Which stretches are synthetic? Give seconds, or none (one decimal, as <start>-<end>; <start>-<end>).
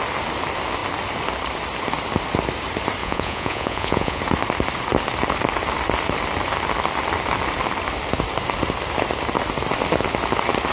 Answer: 3.0-4.2